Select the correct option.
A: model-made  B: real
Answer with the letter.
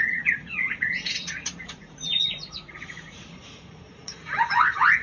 A